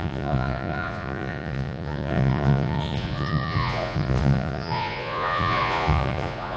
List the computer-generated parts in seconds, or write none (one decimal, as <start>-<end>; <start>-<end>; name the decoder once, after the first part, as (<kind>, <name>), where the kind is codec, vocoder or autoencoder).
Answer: 0.0-6.6 (vocoder, Vocos)